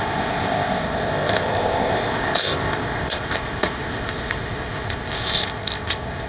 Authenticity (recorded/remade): remade